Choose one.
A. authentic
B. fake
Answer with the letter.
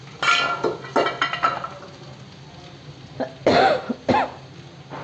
A